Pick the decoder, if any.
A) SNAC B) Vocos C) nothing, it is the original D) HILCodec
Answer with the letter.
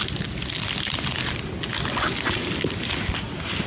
C